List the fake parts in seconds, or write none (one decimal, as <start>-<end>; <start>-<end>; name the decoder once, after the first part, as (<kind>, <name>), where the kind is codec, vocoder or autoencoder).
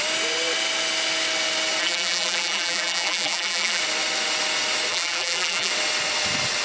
1.8-3.8 (vocoder, BigVGAN v2); 4.9-5.7